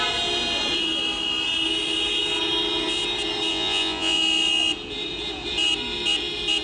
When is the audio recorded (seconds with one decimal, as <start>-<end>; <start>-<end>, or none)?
0.0-3.5; 4.2-6.6